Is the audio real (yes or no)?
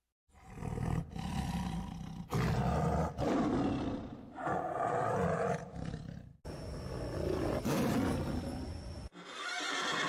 yes